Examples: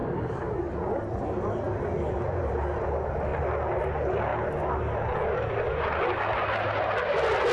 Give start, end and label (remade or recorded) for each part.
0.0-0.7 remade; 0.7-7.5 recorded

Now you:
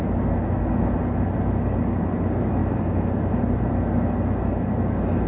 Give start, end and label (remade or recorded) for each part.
0.0-5.3 recorded

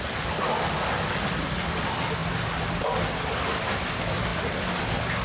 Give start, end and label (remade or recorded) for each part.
0.0-5.2 recorded

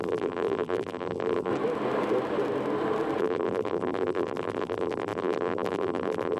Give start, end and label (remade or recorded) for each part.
0.0-1.5 remade; 1.5-3.2 recorded; 3.2-6.4 remade

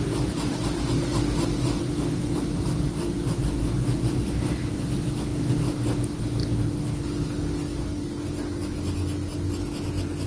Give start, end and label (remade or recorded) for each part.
0.0-10.3 recorded

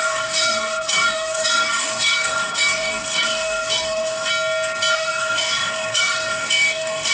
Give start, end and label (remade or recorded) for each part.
0.0-4.3 remade; 4.3-4.9 recorded; 4.9-7.1 remade

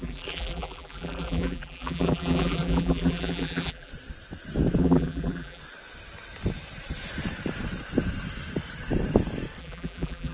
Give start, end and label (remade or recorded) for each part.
0.0-3.9 remade; 3.9-4.8 recorded; 4.8-5.6 remade; 5.6-9.6 recorded; 9.6-10.3 remade